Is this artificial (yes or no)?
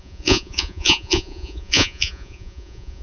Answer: yes